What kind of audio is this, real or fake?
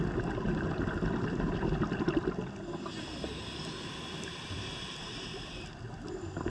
real